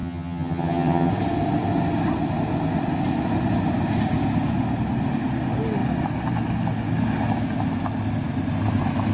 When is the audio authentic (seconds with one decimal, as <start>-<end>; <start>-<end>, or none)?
1.1-9.1